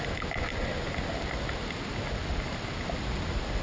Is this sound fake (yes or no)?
no